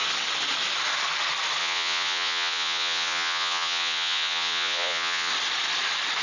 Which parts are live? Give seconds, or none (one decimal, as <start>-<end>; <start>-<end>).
0.0-1.6; 5.3-6.2